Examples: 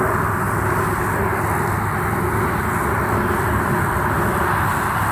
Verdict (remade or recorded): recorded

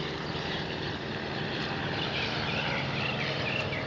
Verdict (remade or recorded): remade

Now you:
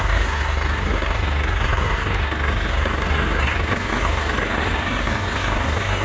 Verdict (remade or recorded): remade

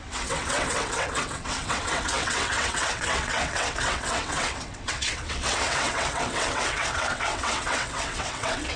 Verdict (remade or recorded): remade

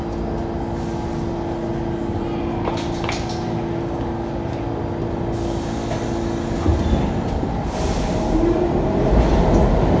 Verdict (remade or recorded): recorded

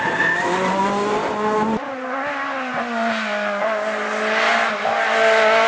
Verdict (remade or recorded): recorded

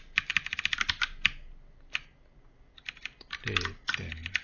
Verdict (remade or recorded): recorded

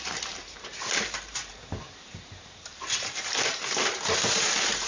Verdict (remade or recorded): remade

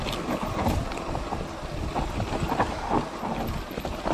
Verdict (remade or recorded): recorded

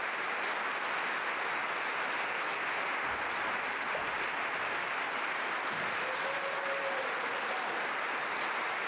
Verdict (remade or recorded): recorded